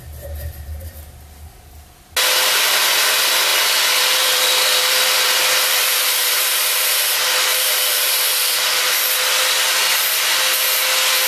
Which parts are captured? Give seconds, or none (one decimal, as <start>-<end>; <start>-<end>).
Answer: 0.0-3.5; 6.4-7.5; 8.8-11.3